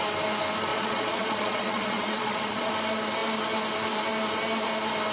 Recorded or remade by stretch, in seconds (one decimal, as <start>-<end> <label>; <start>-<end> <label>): 0.0-0.7 recorded; 0.7-2.7 remade; 2.7-5.1 recorded